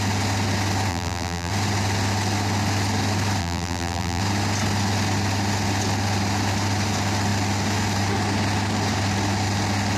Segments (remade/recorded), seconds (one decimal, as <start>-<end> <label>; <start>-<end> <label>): 0.0-0.9 recorded; 0.9-1.5 remade; 1.5-3.4 recorded; 3.4-4.2 remade; 4.2-10.0 recorded